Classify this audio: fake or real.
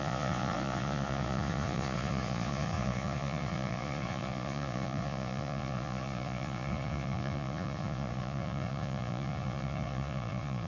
fake